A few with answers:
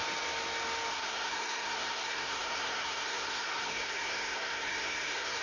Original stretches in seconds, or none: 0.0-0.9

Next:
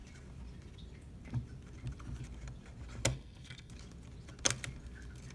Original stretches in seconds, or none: 0.0-3.1; 3.7-5.3

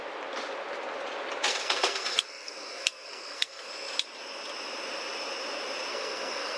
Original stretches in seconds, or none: 0.0-1.5; 3.7-5.9

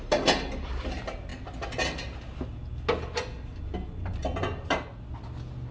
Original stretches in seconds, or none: 0.0-5.7

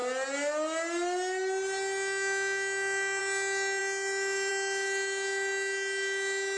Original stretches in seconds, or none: 0.0-6.6

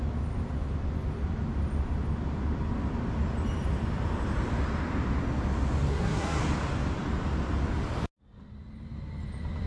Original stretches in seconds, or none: 0.0-5.9; 6.4-9.7

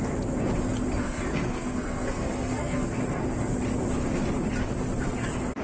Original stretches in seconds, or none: 0.0-1.0; 2.9-5.6